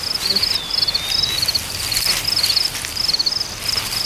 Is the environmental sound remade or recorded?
recorded